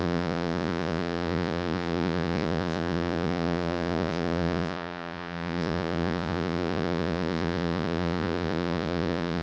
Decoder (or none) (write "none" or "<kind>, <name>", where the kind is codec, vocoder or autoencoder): vocoder, Vocos